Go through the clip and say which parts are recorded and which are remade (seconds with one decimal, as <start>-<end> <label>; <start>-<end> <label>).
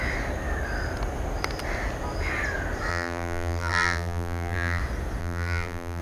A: 0.0-2.9 recorded; 2.9-4.8 remade; 4.8-5.2 recorded; 5.2-6.0 remade